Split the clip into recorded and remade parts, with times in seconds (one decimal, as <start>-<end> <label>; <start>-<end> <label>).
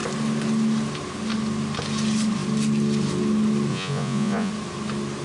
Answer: 0.0-3.7 recorded; 3.7-4.5 remade; 4.5-5.2 recorded